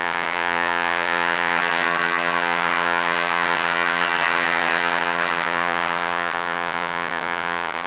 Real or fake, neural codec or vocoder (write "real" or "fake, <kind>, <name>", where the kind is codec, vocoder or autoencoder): fake, vocoder, HiFi-GAN